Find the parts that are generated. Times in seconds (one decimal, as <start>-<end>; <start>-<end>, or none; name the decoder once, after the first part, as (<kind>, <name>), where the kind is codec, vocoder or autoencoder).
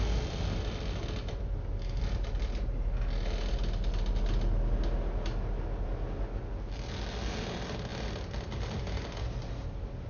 none